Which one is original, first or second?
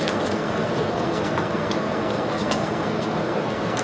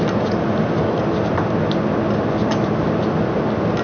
second